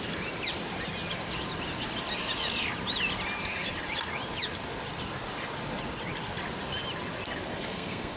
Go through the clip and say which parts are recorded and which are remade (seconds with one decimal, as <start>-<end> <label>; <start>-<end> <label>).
0.0-7.5 recorded; 7.5-8.2 remade